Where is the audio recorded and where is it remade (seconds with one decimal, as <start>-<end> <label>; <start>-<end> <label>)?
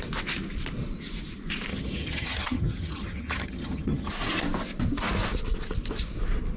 0.0-1.7 recorded; 1.7-4.1 remade; 4.1-6.6 recorded